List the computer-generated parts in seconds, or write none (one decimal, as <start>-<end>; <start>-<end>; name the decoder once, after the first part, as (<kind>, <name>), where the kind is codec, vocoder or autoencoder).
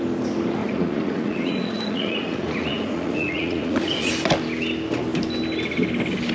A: 0.6-4.1 (vocoder, Vocos)